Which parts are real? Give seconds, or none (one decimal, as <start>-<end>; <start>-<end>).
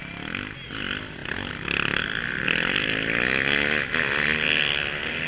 0.0-5.3